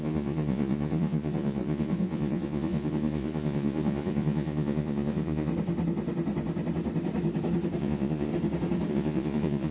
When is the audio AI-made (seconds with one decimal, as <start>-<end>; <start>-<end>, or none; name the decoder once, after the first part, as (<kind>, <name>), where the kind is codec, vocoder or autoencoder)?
0.0-5.5 (vocoder, Vocos); 7.8-8.3; 8.9-9.7